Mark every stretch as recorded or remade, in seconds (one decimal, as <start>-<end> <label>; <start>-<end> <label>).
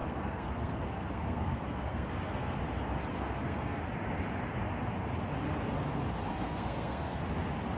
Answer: 0.0-2.6 remade; 2.6-3.1 recorded; 3.1-3.8 remade; 3.8-6.3 recorded; 6.3-7.2 remade; 7.2-7.8 recorded